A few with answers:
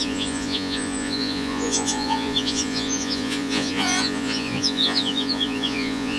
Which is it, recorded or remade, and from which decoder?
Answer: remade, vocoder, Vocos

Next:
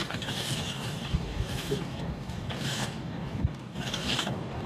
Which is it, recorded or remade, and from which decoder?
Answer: remade, codec, DAC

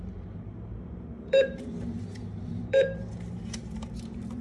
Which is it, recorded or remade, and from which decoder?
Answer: remade, vocoder, BigVGAN v2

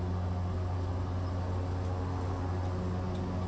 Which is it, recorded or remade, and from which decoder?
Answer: recorded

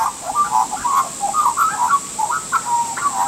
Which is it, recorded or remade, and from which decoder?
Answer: recorded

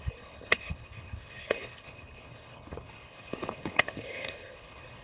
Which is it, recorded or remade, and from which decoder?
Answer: remade, codec, HILCodec